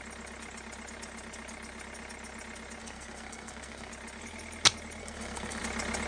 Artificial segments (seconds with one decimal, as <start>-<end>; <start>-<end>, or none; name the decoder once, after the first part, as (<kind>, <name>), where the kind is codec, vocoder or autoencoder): 2.8-3.9 (codec, SNAC); 5.0-5.6